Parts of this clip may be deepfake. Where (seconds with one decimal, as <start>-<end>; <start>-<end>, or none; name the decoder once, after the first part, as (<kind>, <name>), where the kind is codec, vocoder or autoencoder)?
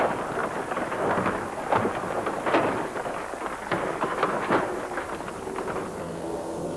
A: 6.0-6.8 (codec, SNAC)